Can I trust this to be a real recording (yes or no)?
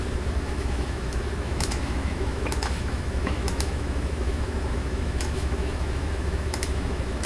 no